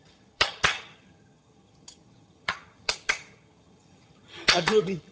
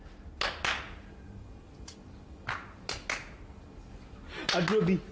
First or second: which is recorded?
second